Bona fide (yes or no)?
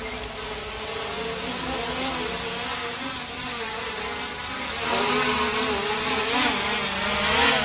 yes